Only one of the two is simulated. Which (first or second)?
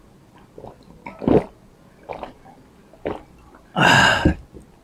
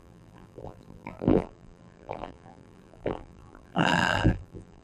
second